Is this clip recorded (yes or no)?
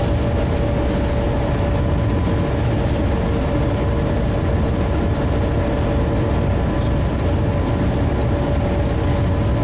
yes